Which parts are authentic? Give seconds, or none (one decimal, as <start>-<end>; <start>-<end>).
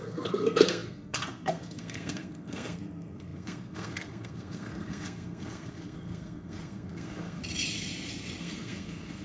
7.4-8.4